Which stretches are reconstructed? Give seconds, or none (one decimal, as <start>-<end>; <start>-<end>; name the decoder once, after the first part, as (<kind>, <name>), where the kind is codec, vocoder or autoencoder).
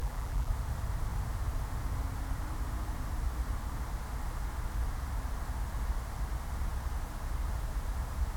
0.0-0.5 (vocoder, BigVGAN v2)